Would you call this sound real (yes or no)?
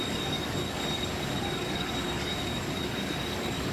no